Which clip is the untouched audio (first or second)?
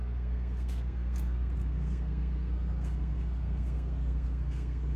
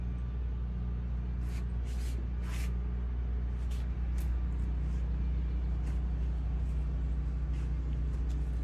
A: second